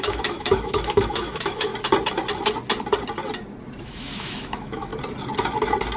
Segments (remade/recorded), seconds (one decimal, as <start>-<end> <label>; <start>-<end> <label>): 0.0-1.7 remade; 1.7-3.8 recorded; 3.8-4.9 remade; 4.9-6.0 recorded